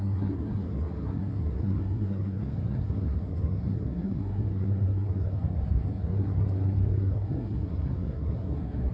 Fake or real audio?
fake